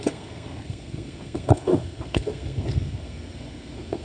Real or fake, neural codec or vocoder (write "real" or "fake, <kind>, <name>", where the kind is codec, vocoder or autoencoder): fake, codec, SNAC